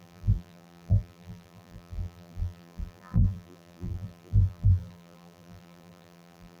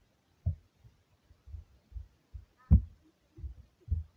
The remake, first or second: first